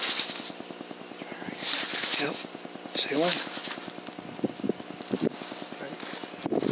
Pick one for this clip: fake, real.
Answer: real